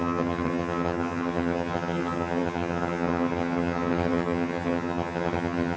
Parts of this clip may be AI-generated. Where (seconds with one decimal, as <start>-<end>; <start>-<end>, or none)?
0.0-5.8